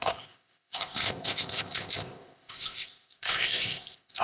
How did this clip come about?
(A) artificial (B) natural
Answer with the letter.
A